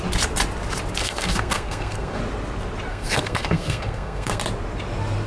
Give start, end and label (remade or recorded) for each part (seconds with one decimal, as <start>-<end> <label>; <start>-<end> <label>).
0.0-1.0 recorded; 1.0-2.2 remade; 2.2-2.9 recorded; 2.9-4.4 remade; 4.4-5.3 recorded